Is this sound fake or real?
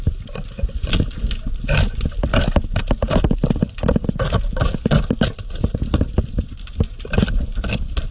real